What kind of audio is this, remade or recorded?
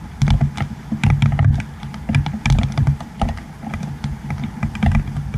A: recorded